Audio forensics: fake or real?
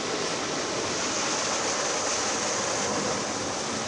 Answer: real